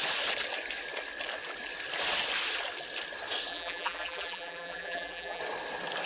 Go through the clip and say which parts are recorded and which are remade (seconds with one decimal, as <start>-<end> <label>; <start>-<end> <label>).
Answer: 0.0-3.5 recorded; 3.5-5.4 remade; 5.4-6.1 recorded